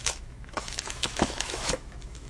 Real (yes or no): no